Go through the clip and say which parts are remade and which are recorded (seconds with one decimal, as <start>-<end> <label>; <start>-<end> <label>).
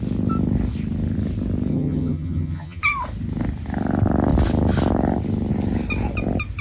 0.0-1.7 recorded; 1.7-2.8 remade; 2.8-6.6 recorded